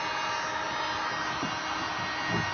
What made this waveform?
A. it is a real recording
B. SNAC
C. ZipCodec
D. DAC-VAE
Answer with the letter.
A